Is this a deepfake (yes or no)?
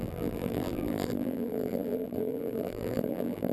yes